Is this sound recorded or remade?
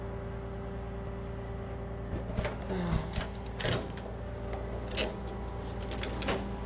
recorded